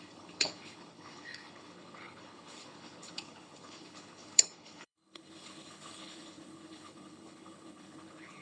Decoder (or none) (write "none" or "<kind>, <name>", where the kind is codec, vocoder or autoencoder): codec, HILCodec